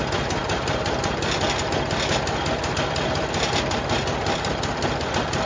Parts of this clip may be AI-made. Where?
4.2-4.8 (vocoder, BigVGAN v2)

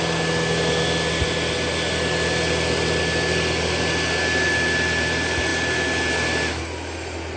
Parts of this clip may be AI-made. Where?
none